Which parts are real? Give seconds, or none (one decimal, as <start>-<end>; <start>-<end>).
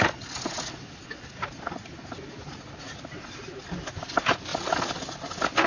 0.0-5.7